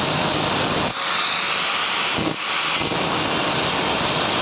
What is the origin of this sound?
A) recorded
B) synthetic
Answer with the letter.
A